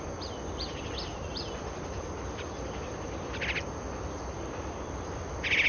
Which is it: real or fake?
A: real